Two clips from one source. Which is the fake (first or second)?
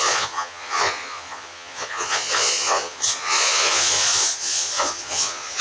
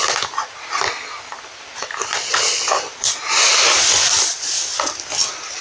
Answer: first